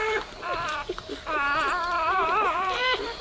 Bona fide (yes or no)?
no